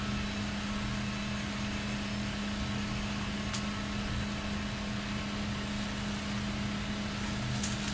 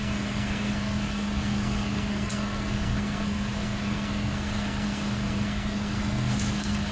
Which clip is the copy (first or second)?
second